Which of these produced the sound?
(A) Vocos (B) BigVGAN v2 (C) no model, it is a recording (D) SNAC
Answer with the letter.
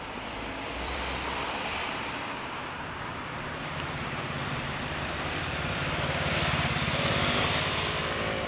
B